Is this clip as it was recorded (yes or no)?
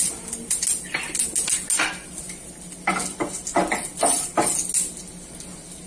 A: yes